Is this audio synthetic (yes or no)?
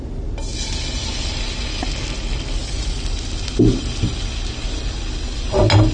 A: no